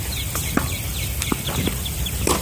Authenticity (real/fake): real